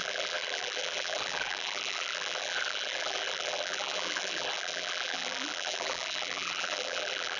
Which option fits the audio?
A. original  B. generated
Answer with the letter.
B